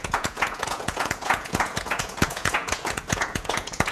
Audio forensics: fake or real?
fake